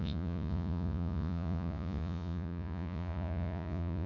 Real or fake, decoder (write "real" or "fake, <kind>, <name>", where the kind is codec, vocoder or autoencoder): fake, vocoder, Vocos